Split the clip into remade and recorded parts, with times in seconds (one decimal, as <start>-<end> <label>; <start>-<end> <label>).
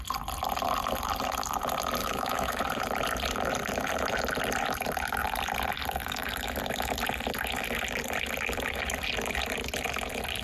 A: 0.0-2.0 recorded; 2.0-2.6 remade; 2.6-10.4 recorded